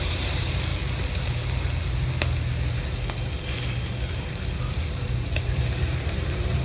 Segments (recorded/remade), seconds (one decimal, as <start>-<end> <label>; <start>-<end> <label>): 0.0-0.7 remade; 0.7-4.7 recorded; 4.7-6.6 remade